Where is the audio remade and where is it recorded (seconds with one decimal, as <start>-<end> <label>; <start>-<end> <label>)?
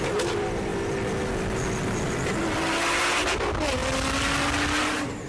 0.0-5.3 recorded